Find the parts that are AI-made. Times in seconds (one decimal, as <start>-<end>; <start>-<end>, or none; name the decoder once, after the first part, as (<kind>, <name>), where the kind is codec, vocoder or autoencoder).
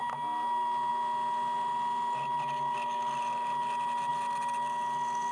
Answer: none